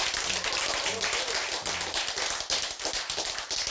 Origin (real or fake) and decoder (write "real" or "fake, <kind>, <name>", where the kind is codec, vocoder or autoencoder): real